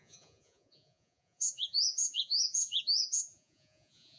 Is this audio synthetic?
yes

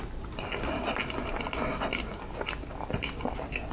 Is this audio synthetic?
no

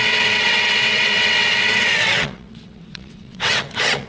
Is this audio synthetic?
yes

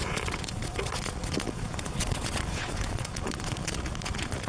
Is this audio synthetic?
yes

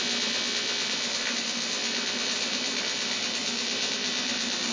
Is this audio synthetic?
no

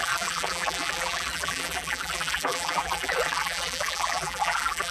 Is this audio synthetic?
yes